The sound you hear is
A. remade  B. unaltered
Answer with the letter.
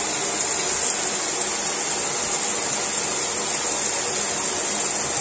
B